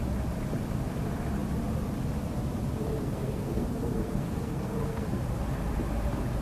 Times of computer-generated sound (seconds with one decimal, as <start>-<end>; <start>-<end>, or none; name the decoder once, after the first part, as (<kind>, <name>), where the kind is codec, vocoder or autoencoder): 2.9-5.2 (codec, SNAC)